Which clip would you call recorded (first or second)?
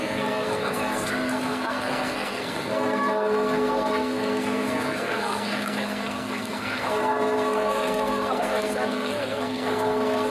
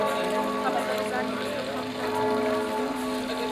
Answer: second